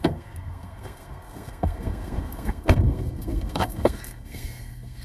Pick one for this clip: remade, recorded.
remade